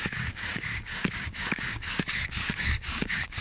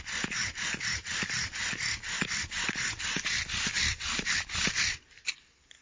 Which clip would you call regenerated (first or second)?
first